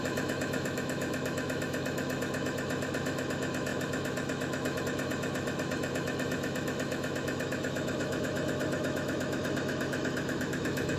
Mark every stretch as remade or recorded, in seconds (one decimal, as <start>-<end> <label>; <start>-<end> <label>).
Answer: 0.0-11.0 remade